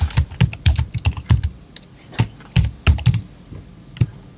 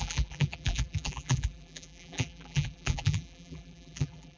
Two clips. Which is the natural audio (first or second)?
first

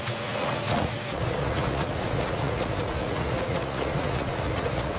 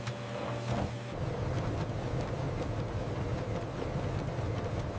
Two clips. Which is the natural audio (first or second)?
second